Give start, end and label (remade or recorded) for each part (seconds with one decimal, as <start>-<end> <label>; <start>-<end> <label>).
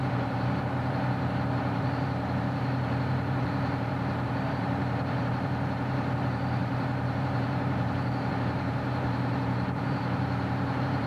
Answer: 0.0-11.1 remade